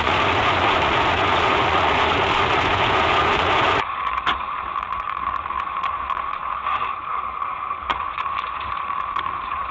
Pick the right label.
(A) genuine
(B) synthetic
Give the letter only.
B